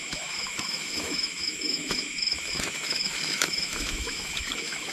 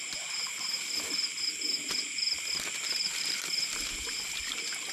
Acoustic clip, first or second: second